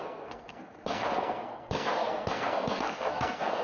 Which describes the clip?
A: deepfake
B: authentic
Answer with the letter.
A